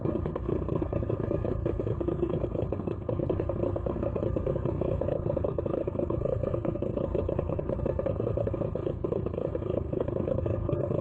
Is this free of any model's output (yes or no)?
no